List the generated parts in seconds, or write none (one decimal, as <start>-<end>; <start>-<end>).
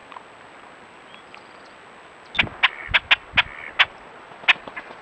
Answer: none